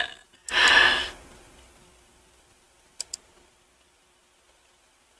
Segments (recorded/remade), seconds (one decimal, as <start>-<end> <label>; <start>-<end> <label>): 0.0-5.2 recorded